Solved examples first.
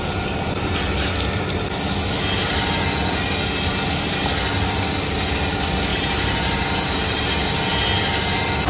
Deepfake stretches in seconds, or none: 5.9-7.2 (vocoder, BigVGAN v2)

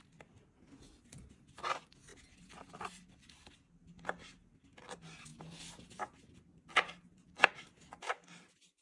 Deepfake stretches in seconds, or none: 2.1-3.5 (vocoder, BigVGAN v2)